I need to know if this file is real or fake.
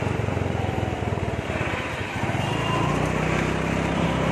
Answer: fake